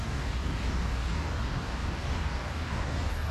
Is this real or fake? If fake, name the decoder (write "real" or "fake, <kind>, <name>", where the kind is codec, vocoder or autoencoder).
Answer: fake, codec, DAC